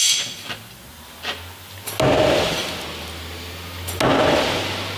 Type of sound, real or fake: real